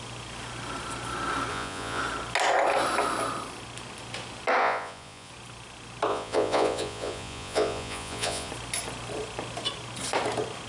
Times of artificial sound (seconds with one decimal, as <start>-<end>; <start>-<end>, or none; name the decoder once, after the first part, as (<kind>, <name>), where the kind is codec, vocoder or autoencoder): 1.5-2.0 (vocoder, Vocos); 4.6-5.3; 6.1-8.5